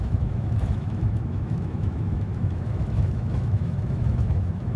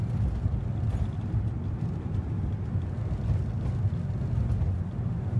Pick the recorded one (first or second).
second